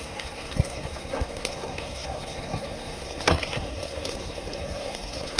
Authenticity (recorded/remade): remade